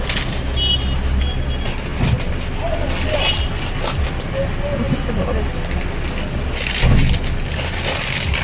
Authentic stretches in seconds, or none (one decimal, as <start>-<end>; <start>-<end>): 0.0-8.4